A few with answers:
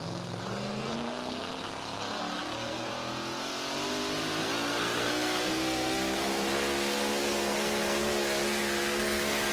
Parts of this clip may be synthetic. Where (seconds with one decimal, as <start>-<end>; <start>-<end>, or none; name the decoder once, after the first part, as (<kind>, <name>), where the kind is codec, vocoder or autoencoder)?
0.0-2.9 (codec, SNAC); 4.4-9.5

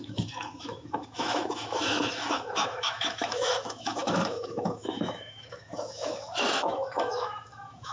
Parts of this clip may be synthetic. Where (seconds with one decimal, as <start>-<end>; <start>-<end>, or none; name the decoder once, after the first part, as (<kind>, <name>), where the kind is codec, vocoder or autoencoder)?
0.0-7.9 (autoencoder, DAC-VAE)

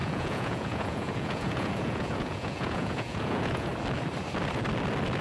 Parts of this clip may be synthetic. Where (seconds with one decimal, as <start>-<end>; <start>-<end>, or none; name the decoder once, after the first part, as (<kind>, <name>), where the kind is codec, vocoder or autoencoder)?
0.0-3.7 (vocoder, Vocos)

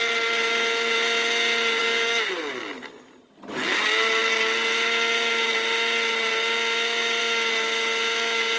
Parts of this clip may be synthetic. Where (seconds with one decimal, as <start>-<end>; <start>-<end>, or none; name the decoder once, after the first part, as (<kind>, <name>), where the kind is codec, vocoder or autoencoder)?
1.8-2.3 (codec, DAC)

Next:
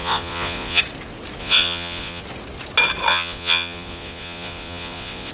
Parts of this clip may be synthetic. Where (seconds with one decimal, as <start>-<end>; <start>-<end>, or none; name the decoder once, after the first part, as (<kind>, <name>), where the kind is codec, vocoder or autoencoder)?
0.0-0.8 (vocoder, Vocos); 1.4-2.2; 3.1-5.3